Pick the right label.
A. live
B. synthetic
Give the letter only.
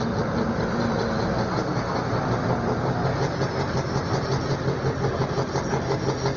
A